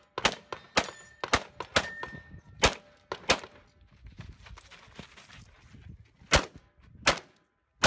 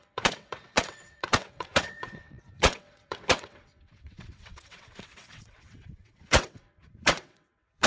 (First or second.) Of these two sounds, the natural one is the first